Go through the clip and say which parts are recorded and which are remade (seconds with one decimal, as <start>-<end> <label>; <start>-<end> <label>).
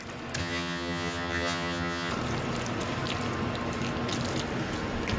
0.0-0.4 recorded; 0.4-2.1 remade; 2.1-5.2 recorded